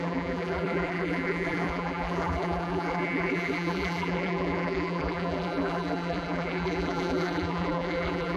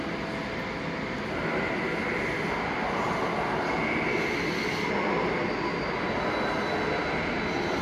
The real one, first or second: second